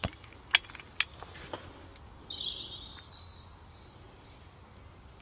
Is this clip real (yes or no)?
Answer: yes